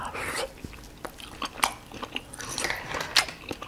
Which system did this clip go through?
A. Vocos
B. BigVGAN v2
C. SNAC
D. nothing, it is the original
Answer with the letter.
D